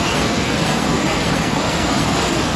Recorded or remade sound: remade